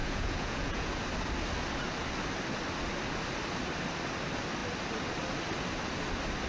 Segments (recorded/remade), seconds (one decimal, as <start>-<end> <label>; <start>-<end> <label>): 0.0-0.9 remade; 0.9-6.5 recorded